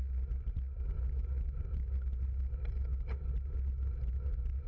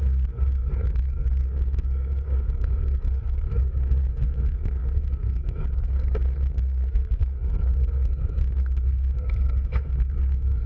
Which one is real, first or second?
first